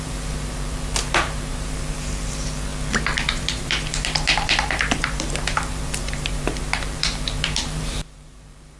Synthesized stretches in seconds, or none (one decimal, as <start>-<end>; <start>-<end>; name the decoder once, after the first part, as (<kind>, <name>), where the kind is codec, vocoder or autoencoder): 0.0-2.7 (vocoder, BigVGAN v2); 3.3-8.8